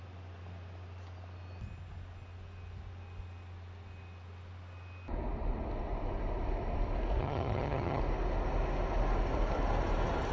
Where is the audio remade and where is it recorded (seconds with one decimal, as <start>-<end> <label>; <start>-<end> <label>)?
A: 0.0-7.2 recorded; 7.2-8.0 remade; 8.0-10.3 recorded